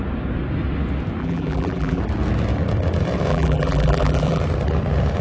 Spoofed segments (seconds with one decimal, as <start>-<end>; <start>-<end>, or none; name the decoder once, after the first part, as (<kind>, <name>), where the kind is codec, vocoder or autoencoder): 1.2-2.0 (vocoder, BigVGAN v2); 3.3-4.4